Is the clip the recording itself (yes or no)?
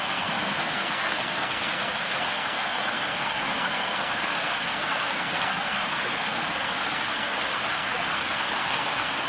no